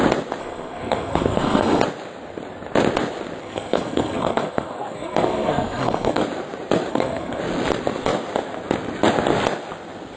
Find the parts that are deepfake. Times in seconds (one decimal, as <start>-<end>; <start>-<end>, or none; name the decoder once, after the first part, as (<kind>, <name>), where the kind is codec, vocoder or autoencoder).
0.4-1.8 (codec, SNAC); 3.4-6.2; 6.9-7.4